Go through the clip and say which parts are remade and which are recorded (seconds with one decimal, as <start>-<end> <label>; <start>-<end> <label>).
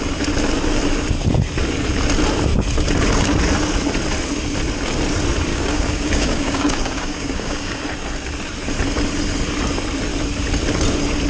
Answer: 0.0-5.5 recorded; 5.5-7.8 remade; 7.8-11.3 recorded